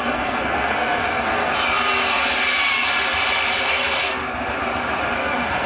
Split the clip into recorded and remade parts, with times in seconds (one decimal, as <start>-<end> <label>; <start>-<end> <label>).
0.0-1.5 remade; 1.5-3.7 recorded; 3.7-4.2 remade; 4.2-5.2 recorded; 5.2-5.7 remade